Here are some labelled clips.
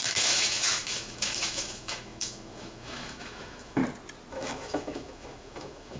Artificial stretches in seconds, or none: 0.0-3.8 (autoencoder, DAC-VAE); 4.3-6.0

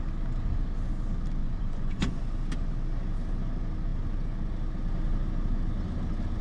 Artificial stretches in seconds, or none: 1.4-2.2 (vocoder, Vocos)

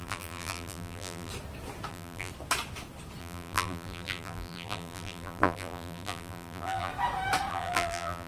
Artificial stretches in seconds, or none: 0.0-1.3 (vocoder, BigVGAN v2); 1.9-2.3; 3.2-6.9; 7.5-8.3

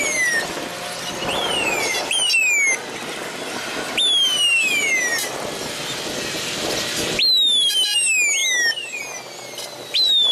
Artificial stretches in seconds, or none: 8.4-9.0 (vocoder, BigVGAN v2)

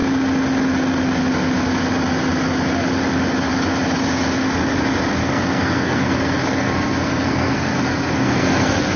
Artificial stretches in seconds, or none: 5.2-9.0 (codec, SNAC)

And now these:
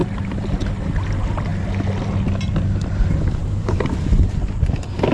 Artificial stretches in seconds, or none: 0.0-0.6 (vocoder, BigVGAN v2); 3.4-4.0

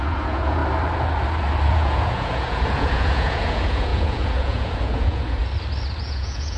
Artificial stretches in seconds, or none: 0.0-0.6 (vocoder, Vocos); 1.7-5.4; 6.0-6.6

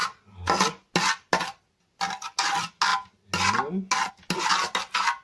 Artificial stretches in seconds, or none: none